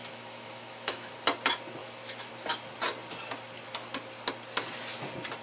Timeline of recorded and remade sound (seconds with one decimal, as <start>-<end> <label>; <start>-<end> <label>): 0.0-1.1 remade; 1.1-1.8 recorded; 1.8-2.3 remade; 2.3-5.4 recorded